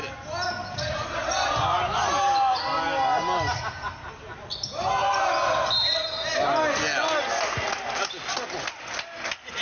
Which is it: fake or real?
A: real